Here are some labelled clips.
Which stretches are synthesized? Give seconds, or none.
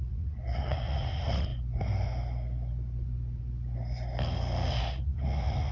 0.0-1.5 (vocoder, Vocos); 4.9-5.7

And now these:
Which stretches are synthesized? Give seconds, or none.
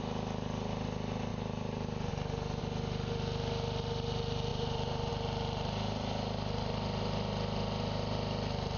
1.3-2.1 (vocoder, BigVGAN v2); 4.5-5.1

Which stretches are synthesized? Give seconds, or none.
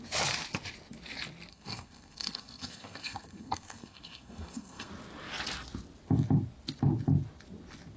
1.5-4.9 (codec, SNAC)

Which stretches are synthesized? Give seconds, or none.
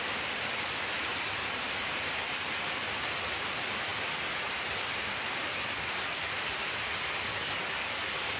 7.3-8.4 (codec, DAC)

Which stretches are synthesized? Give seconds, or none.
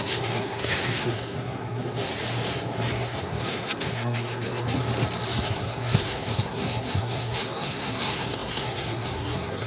0.0-2.1 (codec, SNAC); 2.9-4.8; 5.4-9.7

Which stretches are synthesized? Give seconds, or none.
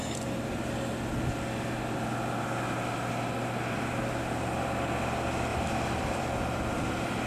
5.5-7.3 (vocoder, BigVGAN v2)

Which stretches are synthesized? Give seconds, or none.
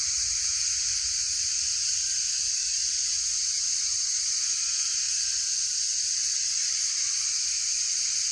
0.0-8.3 (vocoder, BigVGAN v2)